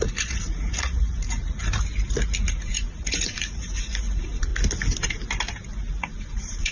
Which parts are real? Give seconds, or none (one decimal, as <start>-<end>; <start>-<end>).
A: 1.6-2.4; 4.5-6.0